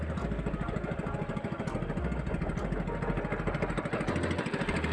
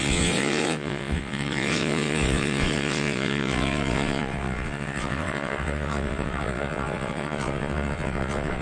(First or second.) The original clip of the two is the first